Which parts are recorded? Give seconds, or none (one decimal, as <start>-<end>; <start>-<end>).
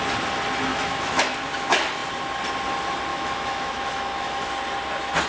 0.0-0.7; 1.2-3.1; 4.5-5.3